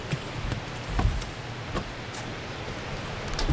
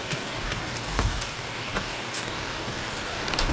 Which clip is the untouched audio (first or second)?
first